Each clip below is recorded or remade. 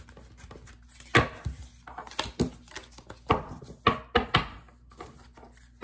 recorded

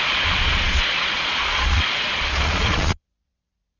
remade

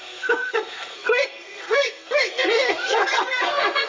remade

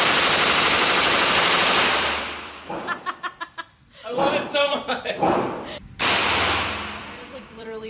remade